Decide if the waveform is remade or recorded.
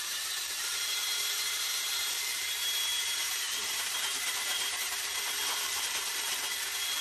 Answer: remade